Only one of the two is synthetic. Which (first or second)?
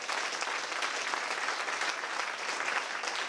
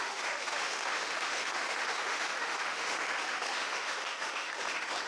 second